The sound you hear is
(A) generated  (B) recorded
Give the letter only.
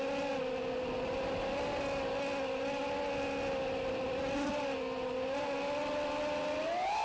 B